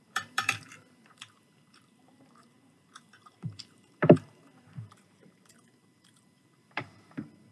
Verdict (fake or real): fake